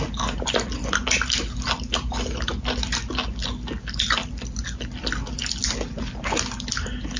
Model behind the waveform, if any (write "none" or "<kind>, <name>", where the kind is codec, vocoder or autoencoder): none